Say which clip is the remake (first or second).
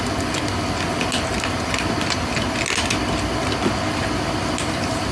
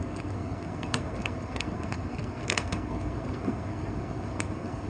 second